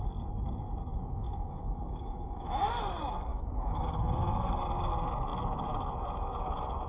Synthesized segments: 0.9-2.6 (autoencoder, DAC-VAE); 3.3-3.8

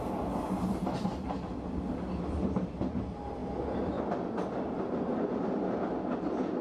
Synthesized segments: none

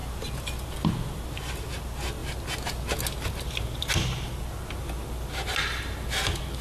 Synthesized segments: none